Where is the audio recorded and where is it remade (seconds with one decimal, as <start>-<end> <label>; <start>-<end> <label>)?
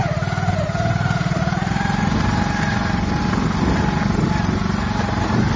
0.0-5.6 recorded